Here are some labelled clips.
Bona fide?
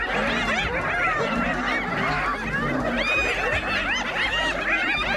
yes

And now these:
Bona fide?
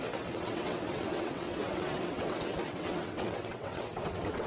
no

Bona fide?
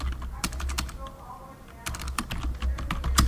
yes